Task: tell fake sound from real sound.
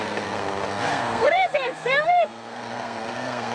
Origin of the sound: fake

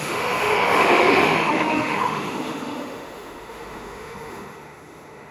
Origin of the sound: fake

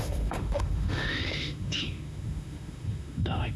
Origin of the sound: fake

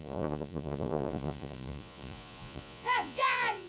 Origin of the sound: fake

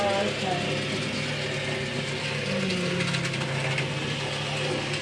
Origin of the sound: real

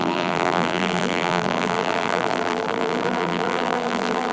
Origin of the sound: fake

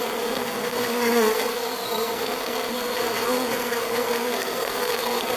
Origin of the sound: fake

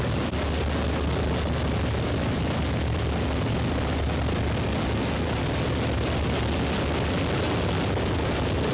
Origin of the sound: real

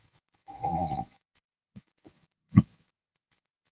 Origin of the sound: fake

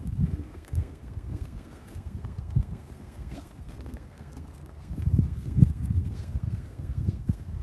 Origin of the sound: fake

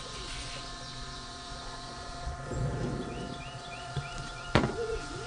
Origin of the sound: fake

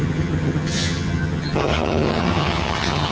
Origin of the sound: fake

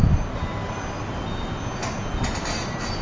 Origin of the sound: real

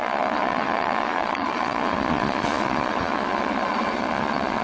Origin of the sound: fake